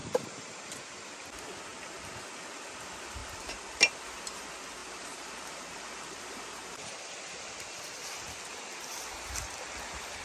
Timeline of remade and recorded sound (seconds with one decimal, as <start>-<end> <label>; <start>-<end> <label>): 0.0-0.5 remade; 0.5-3.2 recorded; 3.2-4.0 remade; 4.0-4.8 recorded; 4.8-6.9 remade; 6.9-10.2 recorded